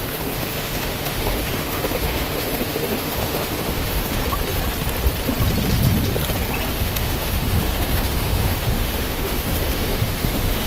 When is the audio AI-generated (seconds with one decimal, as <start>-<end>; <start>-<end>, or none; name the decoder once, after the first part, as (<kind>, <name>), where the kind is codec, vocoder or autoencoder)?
0.0-4.2 (autoencoder, DAC-VAE); 6.7-10.7